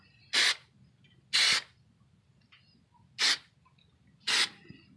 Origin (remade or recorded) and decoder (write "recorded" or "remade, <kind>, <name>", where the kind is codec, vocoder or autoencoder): recorded